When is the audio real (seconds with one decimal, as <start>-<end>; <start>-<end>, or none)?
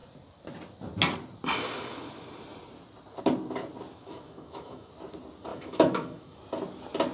0.0-3.9; 4.9-5.5; 6.4-7.1